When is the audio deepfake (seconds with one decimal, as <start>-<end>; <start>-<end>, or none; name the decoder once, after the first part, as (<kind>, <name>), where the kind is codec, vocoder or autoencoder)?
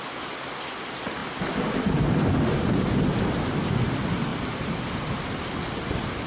none